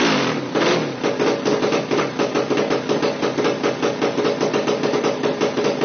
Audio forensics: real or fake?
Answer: real